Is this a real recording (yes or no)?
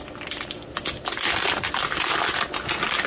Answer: yes